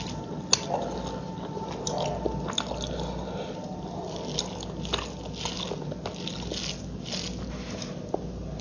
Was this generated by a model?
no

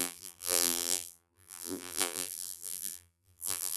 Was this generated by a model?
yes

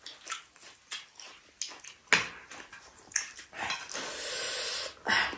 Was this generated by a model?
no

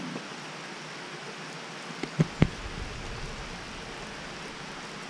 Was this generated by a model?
no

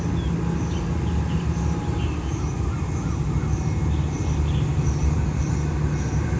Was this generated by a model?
no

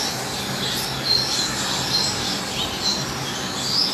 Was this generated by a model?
no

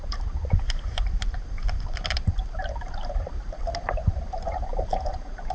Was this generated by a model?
yes